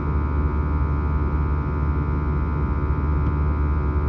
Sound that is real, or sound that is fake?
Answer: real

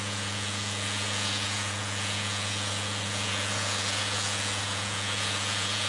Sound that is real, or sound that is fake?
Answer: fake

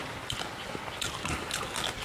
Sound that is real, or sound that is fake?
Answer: real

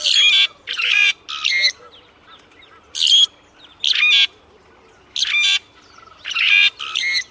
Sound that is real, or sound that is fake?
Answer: real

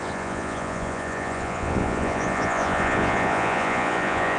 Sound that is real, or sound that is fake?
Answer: fake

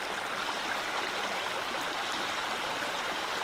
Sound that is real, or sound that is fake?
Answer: real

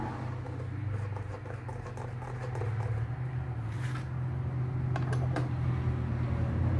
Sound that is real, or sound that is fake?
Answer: real